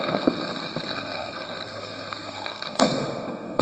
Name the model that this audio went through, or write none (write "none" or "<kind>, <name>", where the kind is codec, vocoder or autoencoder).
codec, SNAC